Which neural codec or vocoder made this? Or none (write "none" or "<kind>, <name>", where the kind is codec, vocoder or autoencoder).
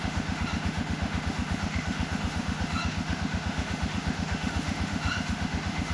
autoencoder, DAC-VAE